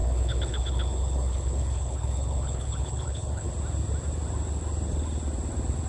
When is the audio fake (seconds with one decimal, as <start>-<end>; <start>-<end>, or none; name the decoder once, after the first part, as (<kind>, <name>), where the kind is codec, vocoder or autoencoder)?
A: 0.0-3.5 (codec, HILCodec)